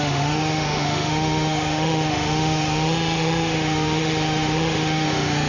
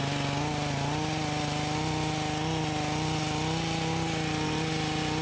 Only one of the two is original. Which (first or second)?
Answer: second